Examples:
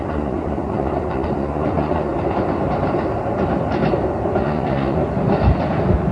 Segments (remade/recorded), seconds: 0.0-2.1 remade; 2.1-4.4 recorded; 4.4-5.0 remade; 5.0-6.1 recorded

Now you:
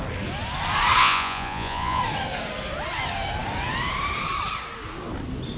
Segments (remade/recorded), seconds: 0.0-1.0 recorded; 1.0-2.0 remade; 2.0-5.6 recorded

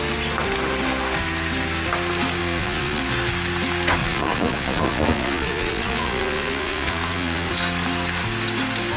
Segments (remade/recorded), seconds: 0.0-2.4 recorded; 2.4-3.0 remade; 3.0-4.0 recorded; 4.0-7.5 remade; 7.5-9.0 recorded

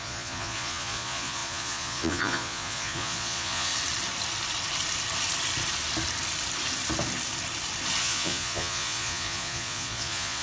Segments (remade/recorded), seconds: 0.0-3.7 remade; 3.7-8.0 recorded; 8.0-10.4 remade

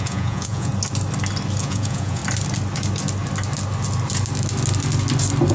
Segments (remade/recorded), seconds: 0.0-0.7 remade; 0.7-1.6 recorded; 1.6-2.2 remade; 2.2-5.5 recorded

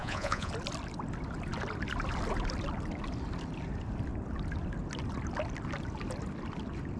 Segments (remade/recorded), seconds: 0.0-0.5 remade; 0.5-7.0 recorded

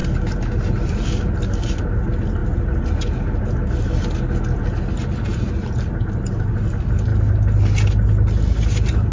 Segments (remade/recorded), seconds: 0.0-9.1 recorded

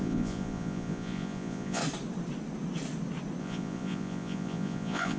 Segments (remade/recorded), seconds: 0.0-1.8 remade; 1.8-3.4 recorded; 3.4-5.2 remade